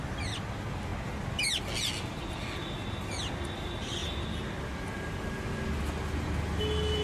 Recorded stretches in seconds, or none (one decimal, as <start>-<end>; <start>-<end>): 0.0-7.0